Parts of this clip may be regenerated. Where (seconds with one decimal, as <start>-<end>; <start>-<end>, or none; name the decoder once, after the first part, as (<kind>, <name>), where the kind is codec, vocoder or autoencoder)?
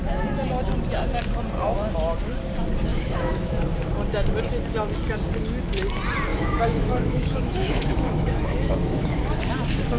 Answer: 2.9-3.5 (autoencoder, DAC-VAE); 6.3-9.4